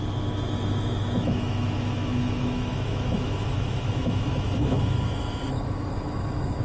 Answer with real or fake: fake